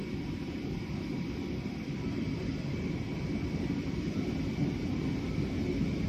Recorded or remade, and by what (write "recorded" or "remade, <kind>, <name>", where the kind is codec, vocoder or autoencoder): recorded